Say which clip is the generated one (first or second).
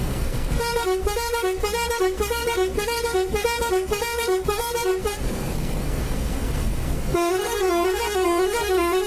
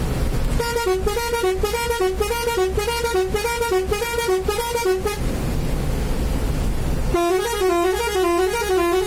first